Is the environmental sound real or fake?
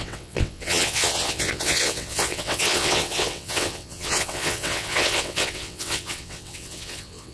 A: fake